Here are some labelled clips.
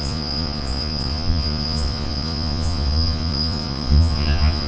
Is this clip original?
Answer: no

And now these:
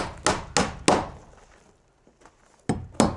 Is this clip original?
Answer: yes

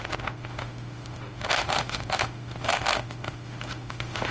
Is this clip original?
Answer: no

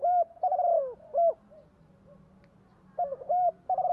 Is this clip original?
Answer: yes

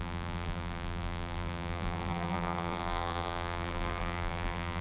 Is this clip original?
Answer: no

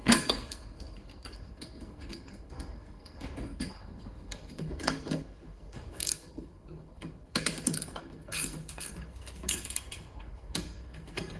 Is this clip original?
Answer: no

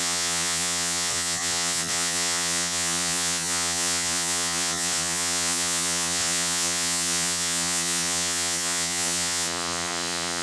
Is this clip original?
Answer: no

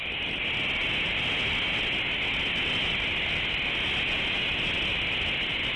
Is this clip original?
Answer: yes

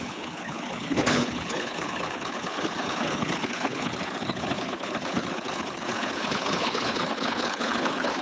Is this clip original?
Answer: no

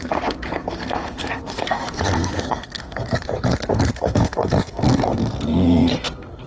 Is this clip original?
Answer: no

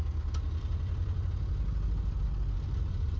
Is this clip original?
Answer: yes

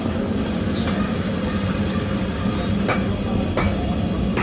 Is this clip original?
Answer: yes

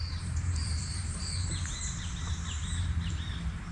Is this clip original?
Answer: no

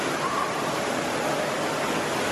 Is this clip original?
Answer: yes